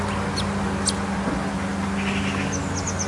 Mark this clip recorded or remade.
recorded